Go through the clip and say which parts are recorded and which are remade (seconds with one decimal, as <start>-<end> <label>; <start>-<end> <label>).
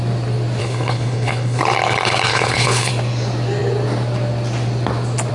0.0-0.6 recorded; 0.6-1.6 remade; 1.6-2.3 recorded; 2.3-2.9 remade; 2.9-5.3 recorded